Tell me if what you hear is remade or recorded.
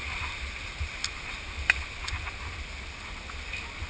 recorded